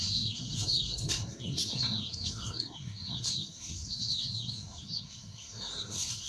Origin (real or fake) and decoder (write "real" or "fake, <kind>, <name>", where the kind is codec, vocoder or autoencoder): fake, codec, SNAC